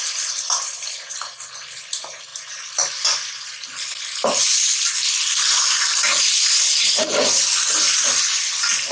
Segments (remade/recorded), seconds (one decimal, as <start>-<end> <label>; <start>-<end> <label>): 0.0-8.9 recorded